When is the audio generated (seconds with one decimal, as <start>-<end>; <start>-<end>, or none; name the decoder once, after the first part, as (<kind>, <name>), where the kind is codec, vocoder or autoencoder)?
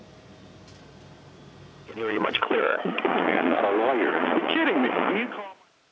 1.9-3.6 (vocoder, Vocos); 4.1-5.1